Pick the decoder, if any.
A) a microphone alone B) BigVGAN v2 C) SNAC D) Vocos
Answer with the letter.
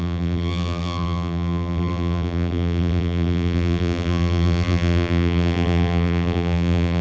B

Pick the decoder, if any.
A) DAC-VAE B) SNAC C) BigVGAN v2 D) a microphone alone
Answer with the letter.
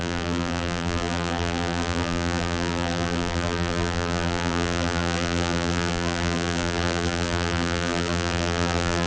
C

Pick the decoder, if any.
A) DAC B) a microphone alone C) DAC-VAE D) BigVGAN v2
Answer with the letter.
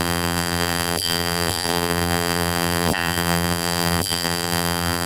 D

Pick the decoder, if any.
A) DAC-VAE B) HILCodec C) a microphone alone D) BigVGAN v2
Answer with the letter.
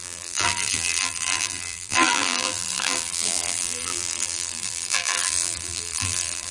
D